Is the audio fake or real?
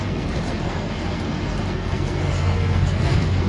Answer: fake